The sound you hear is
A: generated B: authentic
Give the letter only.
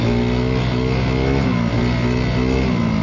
B